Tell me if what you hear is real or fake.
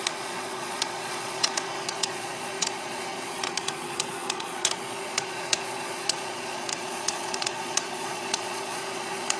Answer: fake